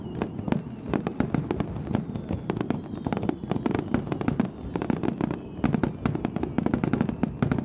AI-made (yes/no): no